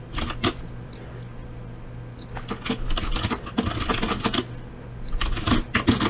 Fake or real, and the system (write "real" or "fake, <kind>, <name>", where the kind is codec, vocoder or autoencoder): real